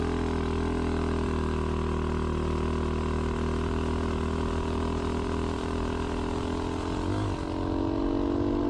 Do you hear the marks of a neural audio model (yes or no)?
no